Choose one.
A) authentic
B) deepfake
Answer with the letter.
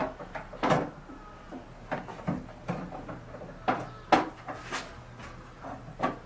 A